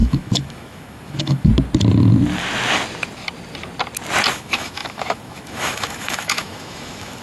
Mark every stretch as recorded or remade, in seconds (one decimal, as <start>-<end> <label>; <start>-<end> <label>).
0.0-1.5 remade; 1.5-4.3 recorded; 4.3-7.2 remade